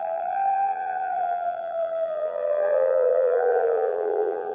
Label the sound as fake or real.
fake